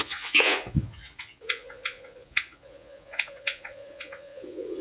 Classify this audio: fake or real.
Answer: fake